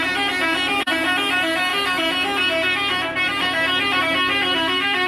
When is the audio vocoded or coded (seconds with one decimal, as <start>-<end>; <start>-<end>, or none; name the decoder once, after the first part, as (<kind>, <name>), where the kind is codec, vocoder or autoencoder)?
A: 0.0-5.1 (vocoder, BigVGAN v2)